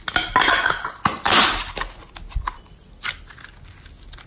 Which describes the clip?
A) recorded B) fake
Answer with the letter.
A